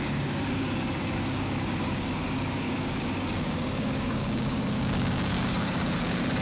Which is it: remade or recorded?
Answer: remade